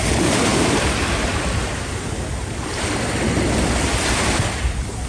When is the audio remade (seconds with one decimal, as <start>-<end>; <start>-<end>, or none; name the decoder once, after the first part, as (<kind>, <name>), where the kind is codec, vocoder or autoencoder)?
none